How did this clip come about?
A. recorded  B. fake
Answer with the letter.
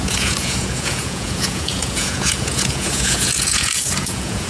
B